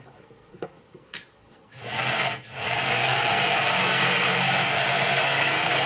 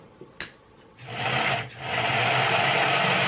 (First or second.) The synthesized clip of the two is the first